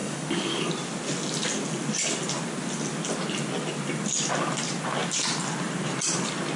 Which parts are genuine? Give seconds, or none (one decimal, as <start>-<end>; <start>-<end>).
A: 0.7-6.6